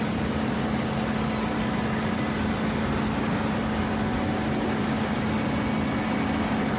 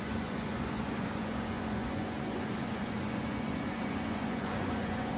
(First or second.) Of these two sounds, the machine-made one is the second